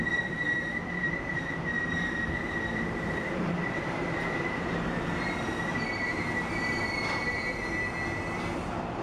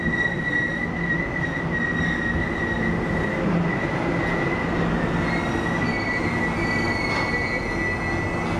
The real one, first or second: second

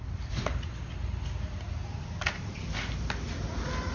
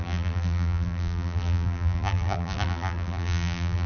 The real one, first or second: first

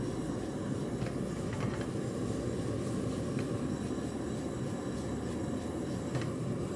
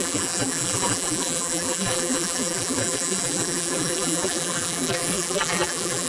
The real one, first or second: first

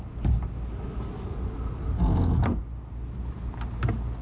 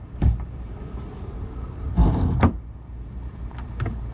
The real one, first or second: first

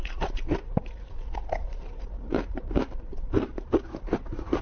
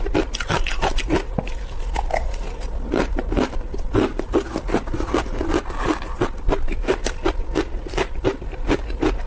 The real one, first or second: second